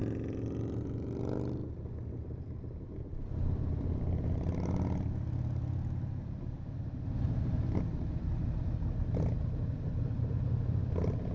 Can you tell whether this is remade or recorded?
recorded